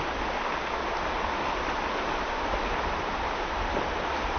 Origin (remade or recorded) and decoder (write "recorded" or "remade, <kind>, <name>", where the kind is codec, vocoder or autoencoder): recorded